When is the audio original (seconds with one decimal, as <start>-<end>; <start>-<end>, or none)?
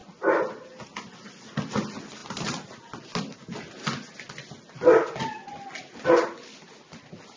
0.0-7.4